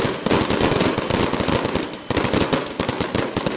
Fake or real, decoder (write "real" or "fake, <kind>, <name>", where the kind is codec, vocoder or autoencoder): real